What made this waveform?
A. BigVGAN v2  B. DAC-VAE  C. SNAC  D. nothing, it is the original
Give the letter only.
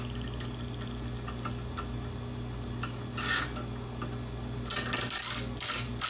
D